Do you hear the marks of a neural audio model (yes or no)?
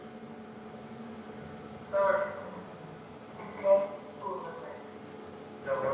no